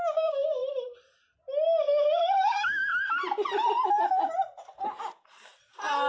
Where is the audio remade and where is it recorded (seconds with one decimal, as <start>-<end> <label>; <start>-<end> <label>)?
0.0-0.6 remade; 0.6-2.4 recorded; 2.4-2.9 remade; 2.9-5.1 recorded; 5.1-5.5 remade; 5.5-6.1 recorded